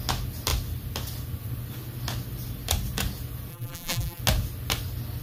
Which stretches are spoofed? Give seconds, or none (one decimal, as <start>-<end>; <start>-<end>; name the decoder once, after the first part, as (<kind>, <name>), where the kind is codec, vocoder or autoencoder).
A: 3.5-4.2 (vocoder, BigVGAN v2)